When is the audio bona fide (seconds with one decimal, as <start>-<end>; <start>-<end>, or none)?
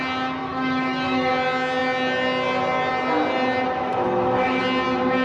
0.0-0.4; 1.3-3.9; 4.6-5.2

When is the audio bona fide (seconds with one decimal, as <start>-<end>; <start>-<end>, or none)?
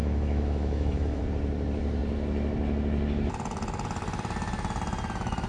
1.2-5.5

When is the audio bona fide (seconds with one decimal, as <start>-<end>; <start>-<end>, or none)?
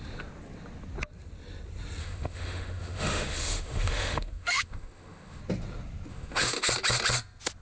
0.0-2.0; 5.4-6.1; 6.7-7.6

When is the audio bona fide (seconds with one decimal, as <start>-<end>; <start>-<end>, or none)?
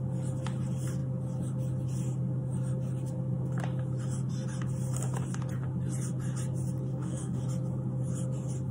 0.0-6.9; 7.4-8.7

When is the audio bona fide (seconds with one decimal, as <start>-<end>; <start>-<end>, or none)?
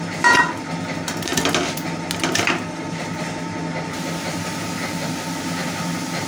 0.0-6.3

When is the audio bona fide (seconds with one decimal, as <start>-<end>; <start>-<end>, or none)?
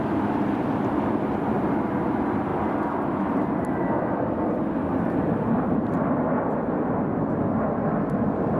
0.0-8.6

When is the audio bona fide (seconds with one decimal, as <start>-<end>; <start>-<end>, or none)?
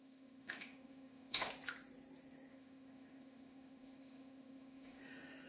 1.5-2.5; 5.0-5.5